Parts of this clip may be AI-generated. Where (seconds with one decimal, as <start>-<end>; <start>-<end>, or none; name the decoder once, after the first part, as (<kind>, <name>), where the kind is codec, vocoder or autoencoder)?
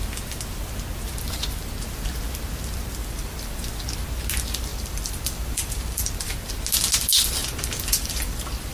3.0-3.6 (vocoder, BigVGAN v2); 4.7-6.5; 7.4-8.7